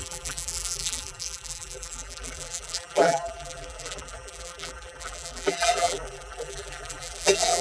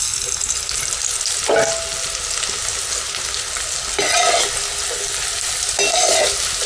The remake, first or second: first